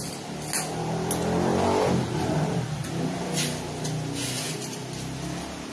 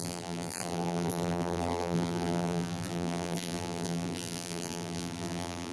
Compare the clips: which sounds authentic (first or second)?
first